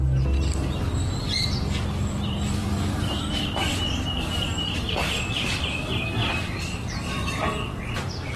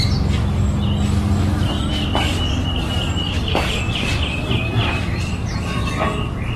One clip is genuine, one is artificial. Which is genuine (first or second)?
second